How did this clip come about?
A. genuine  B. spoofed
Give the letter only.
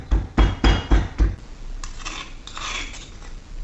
A